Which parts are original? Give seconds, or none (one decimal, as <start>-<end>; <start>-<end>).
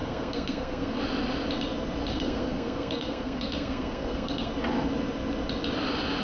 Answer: 1.0-2.1; 4.5-6.2